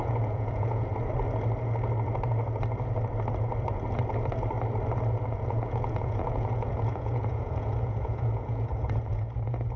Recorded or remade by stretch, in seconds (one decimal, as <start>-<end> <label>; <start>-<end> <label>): 0.0-0.9 remade; 0.9-5.2 recorded; 5.2-9.8 remade